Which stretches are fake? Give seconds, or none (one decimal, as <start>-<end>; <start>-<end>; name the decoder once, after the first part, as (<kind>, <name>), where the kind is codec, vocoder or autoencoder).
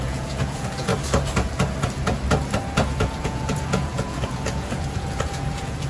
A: 0.0-0.9 (vocoder, Vocos); 3.0-5.9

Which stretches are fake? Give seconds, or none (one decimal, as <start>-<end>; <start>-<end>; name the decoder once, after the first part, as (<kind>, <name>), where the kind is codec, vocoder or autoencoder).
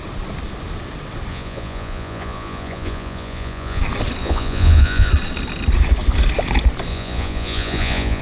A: 1.3-3.8 (vocoder, Vocos); 4.2-5.1; 6.9-8.2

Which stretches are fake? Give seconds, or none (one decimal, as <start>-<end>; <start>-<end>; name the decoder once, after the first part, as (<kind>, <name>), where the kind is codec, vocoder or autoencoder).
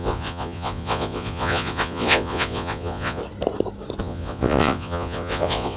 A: 0.0-3.2 (vocoder, Vocos); 4.0-5.8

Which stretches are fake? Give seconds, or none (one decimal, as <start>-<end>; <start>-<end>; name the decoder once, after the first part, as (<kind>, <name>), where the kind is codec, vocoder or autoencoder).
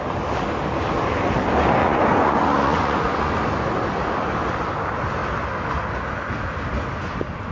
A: 1.8-3.3 (vocoder, Vocos)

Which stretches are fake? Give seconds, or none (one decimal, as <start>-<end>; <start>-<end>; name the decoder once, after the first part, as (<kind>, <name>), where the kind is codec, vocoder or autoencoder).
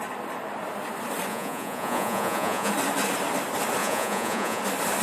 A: 1.3-2.7 (vocoder, Vocos); 3.8-4.6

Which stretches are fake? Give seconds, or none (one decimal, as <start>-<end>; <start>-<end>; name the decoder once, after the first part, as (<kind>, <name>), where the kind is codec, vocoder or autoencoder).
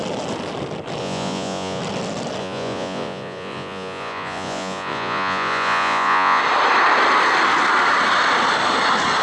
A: 1.0-1.8 (vocoder, Vocos); 2.4-6.4